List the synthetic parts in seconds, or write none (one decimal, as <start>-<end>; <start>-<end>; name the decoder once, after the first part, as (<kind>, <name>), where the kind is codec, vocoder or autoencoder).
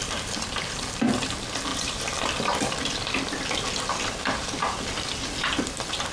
0.0-0.9 (vocoder, BigVGAN v2); 1.7-4.8